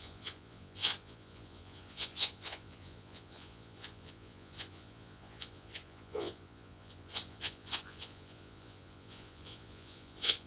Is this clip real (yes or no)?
no